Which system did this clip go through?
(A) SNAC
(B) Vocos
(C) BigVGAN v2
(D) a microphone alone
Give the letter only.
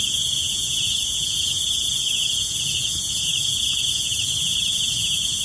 B